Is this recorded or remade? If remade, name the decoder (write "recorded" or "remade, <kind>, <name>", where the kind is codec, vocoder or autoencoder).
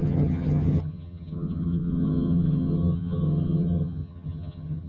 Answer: remade, vocoder, HiFi-GAN